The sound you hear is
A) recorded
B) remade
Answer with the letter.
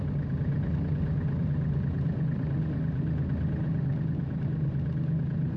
A